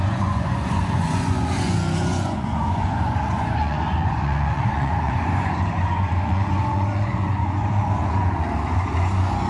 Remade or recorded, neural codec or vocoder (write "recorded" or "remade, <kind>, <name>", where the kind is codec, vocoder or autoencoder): remade, vocoder, Vocos